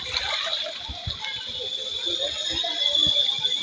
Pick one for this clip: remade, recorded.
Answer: recorded